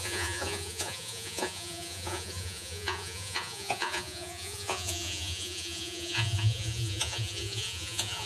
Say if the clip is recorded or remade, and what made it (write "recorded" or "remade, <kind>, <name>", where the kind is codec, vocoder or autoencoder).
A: remade, vocoder, Vocos